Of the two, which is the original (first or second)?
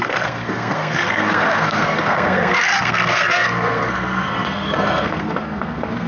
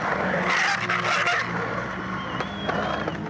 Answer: second